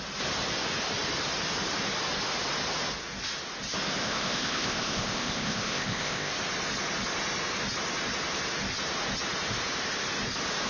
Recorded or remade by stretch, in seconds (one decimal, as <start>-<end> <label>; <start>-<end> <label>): 0.0-4.0 recorded; 4.0-6.3 remade; 6.3-10.7 recorded